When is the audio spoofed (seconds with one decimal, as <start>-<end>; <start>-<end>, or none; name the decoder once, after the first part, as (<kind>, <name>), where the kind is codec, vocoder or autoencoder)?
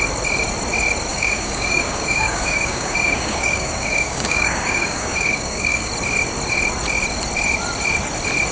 1.1-5.9 (codec, DAC)